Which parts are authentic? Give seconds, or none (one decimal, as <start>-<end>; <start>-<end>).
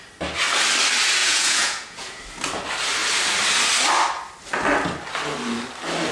0.0-1.2; 2.2-6.1